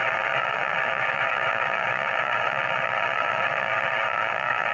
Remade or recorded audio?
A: remade